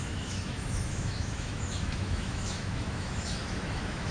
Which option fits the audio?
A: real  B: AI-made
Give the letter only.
B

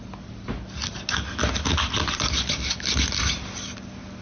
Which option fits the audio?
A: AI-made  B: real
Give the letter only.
B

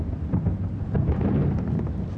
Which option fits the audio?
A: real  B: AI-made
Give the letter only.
A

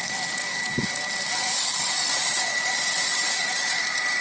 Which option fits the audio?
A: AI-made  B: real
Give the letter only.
B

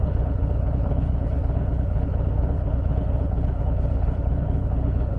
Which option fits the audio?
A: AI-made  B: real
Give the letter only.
A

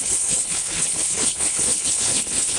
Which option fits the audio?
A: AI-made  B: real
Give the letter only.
A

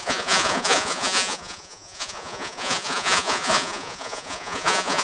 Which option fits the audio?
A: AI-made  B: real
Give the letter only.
A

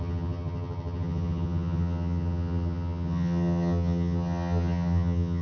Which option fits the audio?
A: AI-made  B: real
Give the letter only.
A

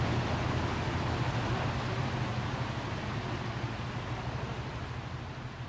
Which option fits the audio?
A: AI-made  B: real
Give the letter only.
B